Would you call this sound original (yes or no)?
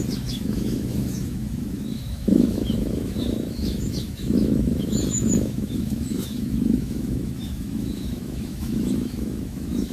no